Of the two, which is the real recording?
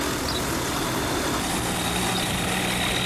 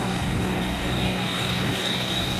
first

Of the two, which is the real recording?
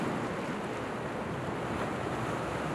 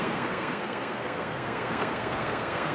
first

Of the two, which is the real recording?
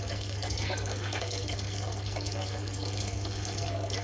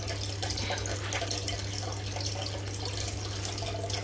second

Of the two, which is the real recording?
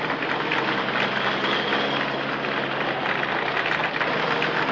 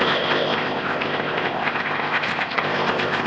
first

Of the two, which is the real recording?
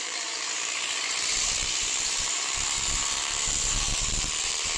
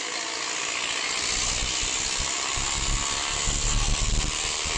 second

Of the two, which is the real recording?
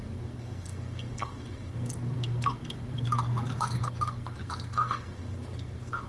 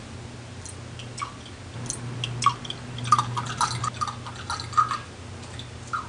second